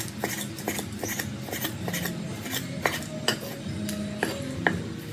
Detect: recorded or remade recorded